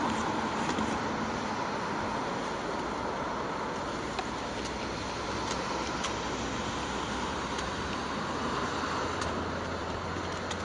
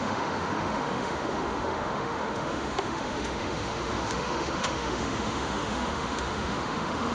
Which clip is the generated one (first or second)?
second